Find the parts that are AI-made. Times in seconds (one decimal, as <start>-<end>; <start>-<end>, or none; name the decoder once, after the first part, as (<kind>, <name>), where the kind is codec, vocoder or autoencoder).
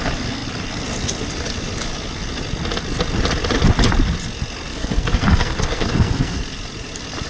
4.7-6.4 (codec, SNAC)